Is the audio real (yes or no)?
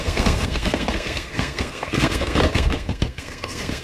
no